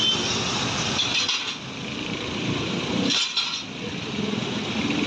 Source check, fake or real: real